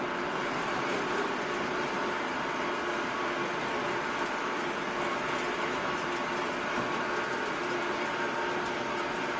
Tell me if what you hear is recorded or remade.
recorded